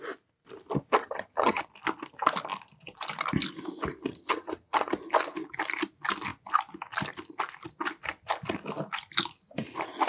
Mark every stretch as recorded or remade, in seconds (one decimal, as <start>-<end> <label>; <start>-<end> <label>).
0.0-1.0 recorded; 1.0-1.6 remade; 1.6-4.1 recorded; 4.1-4.9 remade; 4.9-10.1 recorded